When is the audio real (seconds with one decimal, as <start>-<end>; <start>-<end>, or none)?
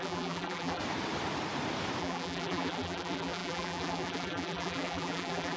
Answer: 0.8-2.0